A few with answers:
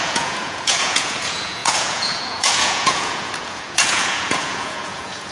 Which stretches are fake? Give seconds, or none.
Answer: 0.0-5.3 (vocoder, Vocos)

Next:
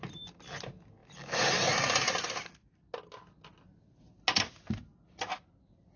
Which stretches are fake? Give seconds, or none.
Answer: none

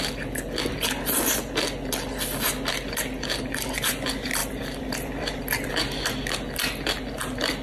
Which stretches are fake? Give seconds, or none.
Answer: 4.4-5.7 (vocoder, BigVGAN v2)

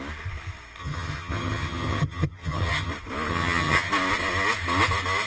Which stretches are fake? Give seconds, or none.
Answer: 0.8-2.9 (vocoder, HiFi-GAN); 3.3-3.9

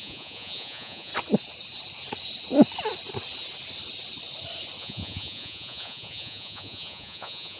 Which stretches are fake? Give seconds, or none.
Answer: 0.0-1.1 (vocoder, Vocos); 4.8-7.6

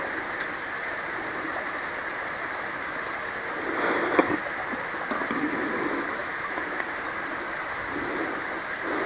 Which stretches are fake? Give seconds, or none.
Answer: 6.2-6.9 (autoencoder, DAC-VAE)

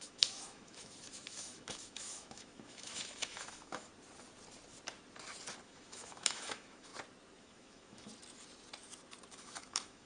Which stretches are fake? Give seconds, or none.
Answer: 0.0-3.9 (autoencoder, DAC-VAE); 5.6-6.9; 7.4-8.1; 9.3-10.1

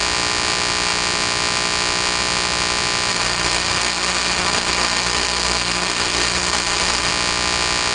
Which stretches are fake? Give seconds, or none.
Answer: 3.1-7.1 (codec, SNAC)